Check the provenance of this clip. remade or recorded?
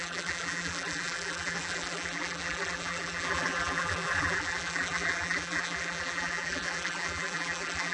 remade